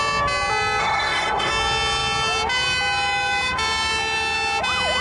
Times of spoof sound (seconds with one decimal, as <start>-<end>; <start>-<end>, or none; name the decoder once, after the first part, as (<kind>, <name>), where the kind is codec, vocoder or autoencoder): 0.8-1.5 (codec, SNAC)